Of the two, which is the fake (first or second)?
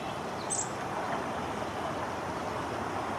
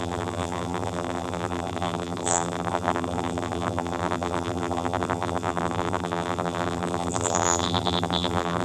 second